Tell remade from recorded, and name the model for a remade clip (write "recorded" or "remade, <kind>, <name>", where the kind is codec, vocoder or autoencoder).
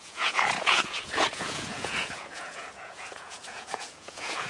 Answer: remade, vocoder, Vocos